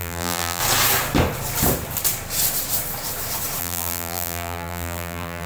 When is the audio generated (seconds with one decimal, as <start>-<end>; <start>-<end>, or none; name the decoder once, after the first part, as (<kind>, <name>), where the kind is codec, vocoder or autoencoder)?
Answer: 0.0-0.6 (vocoder, BigVGAN v2); 3.6-5.5